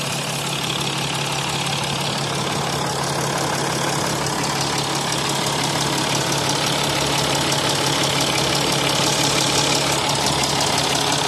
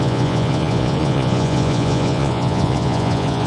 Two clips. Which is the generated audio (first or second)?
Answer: second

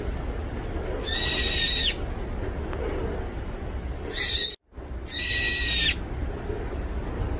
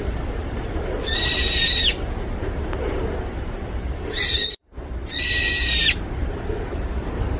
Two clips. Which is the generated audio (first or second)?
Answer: second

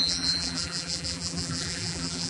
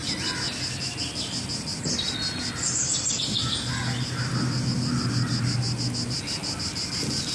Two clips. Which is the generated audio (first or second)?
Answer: first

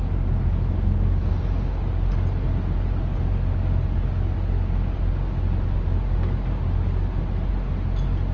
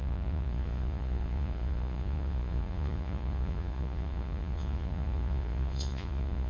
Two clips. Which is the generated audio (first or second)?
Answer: second